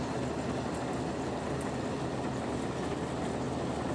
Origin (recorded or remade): recorded